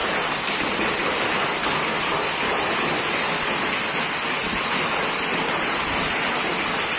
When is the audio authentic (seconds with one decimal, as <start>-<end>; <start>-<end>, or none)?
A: 0.0-7.0